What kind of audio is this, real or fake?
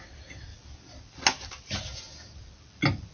real